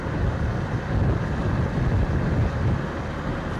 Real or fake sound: real